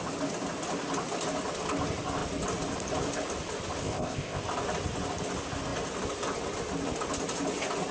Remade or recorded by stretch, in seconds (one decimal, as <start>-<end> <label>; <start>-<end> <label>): 0.0-3.8 recorded; 3.8-4.4 remade; 4.4-7.9 recorded